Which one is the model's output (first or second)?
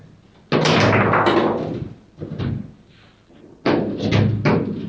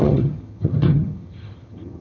second